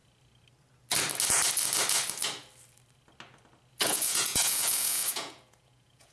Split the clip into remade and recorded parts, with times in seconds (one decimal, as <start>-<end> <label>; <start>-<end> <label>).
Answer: 0.0-3.7 recorded; 3.7-6.1 remade